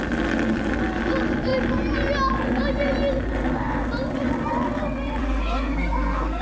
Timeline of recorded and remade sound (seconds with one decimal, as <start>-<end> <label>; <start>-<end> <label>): 0.0-5.2 recorded; 5.2-6.4 remade